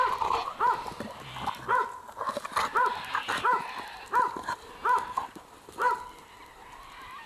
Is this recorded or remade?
recorded